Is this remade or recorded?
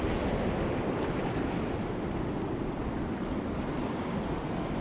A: recorded